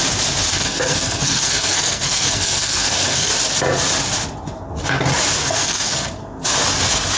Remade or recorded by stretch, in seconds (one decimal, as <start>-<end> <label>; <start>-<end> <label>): 0.0-0.5 recorded; 0.5-3.3 remade; 3.3-5.4 recorded; 5.4-6.1 remade; 6.1-7.2 recorded